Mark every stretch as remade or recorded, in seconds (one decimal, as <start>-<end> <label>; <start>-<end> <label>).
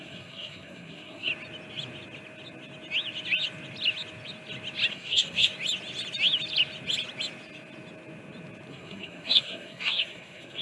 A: 0.0-1.3 remade; 1.3-4.9 recorded; 4.9-5.5 remade; 5.5-8.7 recorded; 8.7-10.6 remade